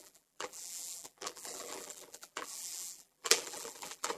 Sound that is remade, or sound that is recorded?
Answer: remade